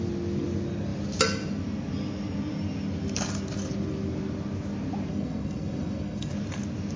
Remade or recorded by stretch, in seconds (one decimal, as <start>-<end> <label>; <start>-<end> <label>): 0.0-5.1 recorded; 5.1-6.3 remade; 6.3-7.0 recorded